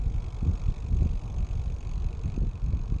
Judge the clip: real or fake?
real